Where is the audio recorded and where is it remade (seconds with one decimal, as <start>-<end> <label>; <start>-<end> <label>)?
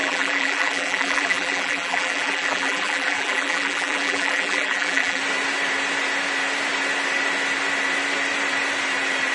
0.0-5.2 remade; 5.2-9.3 recorded